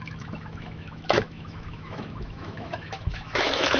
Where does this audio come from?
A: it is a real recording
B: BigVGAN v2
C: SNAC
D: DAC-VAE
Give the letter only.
D